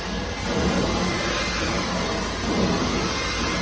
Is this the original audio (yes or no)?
yes